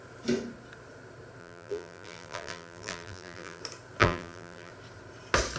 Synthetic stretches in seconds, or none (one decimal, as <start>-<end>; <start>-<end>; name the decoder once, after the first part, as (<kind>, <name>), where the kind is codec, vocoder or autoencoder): 1.4-3.6 (vocoder, BigVGAN v2); 4.0-4.7